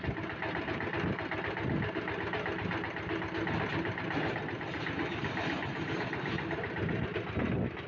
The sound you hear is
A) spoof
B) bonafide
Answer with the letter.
B